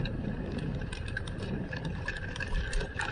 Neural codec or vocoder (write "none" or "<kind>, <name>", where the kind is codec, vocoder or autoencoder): vocoder, BigVGAN v2